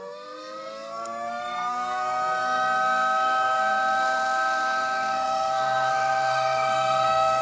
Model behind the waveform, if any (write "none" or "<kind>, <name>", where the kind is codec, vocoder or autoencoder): codec, SNAC